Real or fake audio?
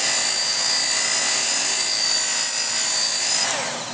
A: real